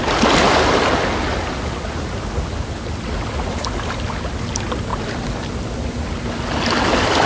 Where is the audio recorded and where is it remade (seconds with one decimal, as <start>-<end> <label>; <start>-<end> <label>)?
0.0-7.3 recorded